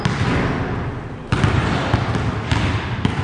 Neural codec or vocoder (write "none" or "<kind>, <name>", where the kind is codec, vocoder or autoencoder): none